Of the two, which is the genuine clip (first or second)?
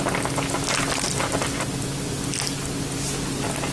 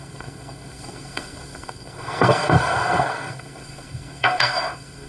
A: first